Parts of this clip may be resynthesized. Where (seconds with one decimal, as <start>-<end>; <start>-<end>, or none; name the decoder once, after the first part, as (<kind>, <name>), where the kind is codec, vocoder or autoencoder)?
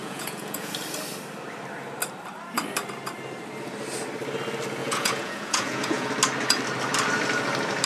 0.0-0.7 (vocoder, Vocos); 4.8-6.1